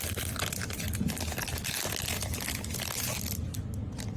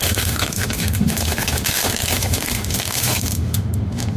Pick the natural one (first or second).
first